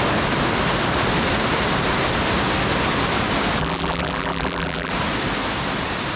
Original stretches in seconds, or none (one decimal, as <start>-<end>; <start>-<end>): 0.0-3.6; 4.9-6.2